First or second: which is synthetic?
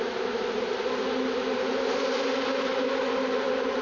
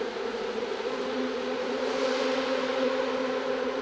second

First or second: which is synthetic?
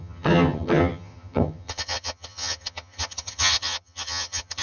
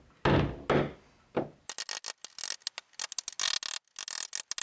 first